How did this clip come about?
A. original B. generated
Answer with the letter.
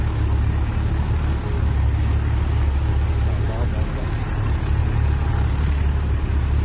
A